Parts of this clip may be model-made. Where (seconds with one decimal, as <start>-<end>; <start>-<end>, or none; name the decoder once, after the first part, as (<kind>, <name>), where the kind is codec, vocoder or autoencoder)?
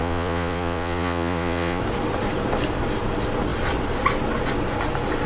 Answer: 0.0-1.8 (vocoder, Vocos)